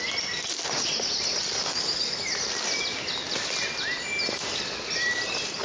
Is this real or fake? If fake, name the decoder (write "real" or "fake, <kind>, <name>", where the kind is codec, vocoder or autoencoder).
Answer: real